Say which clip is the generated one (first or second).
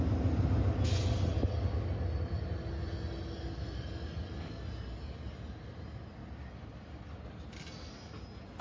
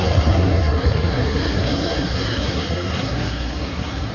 second